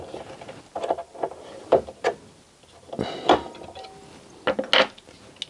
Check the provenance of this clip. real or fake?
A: real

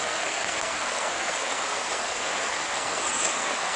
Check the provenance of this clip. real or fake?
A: fake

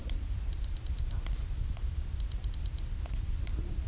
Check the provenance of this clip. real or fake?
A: real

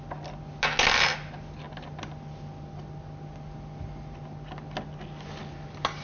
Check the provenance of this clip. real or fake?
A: real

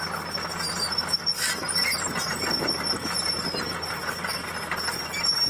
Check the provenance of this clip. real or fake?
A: real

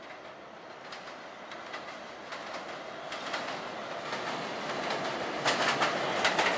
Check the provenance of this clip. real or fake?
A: real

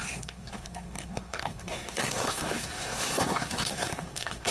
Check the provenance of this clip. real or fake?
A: fake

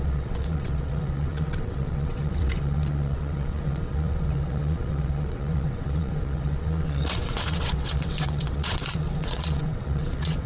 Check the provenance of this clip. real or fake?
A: fake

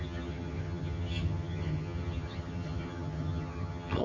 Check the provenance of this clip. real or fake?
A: fake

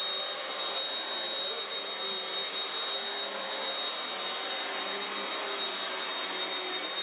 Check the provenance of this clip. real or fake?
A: real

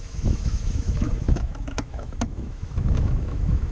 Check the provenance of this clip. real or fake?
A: fake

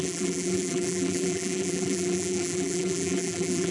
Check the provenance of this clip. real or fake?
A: fake